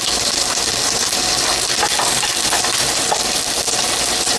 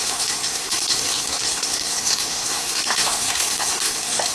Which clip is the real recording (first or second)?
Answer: first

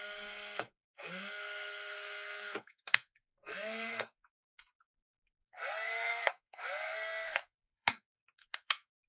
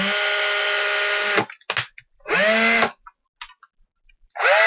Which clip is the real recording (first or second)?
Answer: second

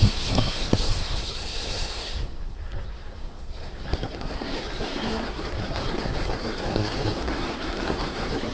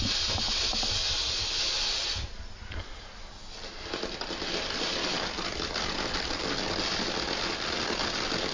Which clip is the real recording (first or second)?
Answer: second